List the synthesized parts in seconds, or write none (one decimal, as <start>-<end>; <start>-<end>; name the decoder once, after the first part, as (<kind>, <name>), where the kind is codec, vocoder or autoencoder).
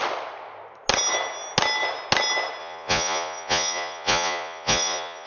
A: 2.6-5.3 (vocoder, Vocos)